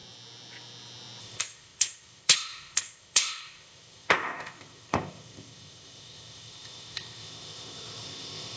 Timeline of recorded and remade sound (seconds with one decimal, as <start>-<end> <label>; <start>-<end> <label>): 0.0-1.2 recorded; 1.2-8.6 remade